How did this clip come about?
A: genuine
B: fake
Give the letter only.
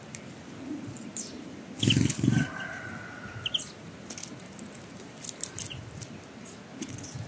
A